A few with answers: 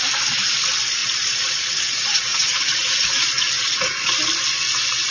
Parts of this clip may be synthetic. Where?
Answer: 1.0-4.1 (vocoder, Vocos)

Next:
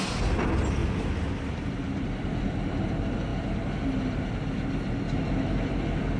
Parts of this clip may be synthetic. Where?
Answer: 0.8-2.4 (vocoder, BigVGAN v2); 3.3-4.3

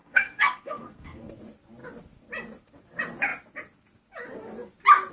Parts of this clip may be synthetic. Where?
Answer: 0.0-1.3 (codec, SNAC)